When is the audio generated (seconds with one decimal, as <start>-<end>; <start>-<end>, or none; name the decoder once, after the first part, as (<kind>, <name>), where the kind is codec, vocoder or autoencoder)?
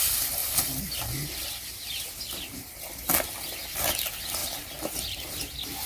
none